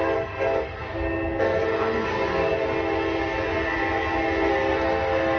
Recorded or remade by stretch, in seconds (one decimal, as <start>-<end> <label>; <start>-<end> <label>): 0.0-0.8 remade; 0.8-1.4 recorded; 1.4-2.3 remade; 2.3-4.5 recorded; 4.5-5.4 remade